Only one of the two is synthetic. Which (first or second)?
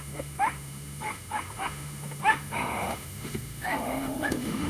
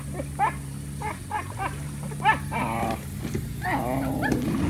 first